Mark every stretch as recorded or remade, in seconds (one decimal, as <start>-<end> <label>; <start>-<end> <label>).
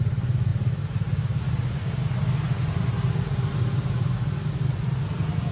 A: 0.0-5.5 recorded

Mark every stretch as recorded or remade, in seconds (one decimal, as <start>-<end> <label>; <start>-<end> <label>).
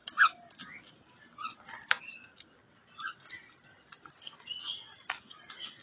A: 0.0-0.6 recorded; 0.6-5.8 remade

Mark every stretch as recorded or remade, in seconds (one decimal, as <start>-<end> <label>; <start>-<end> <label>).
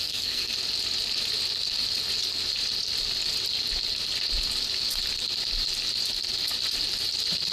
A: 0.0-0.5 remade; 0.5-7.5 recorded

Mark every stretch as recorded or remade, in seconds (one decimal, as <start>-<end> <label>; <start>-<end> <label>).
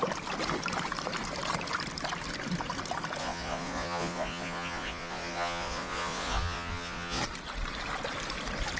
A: 0.0-3.2 recorded; 3.2-7.2 remade; 7.2-8.8 recorded